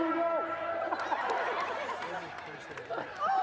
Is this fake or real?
real